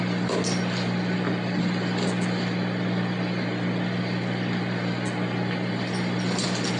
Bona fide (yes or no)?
yes